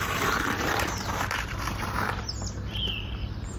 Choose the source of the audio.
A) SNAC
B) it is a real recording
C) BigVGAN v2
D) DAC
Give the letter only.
C